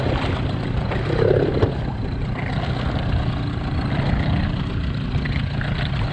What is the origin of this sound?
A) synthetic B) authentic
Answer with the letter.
B